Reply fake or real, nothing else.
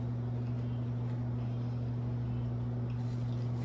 real